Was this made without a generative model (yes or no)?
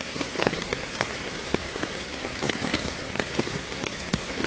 no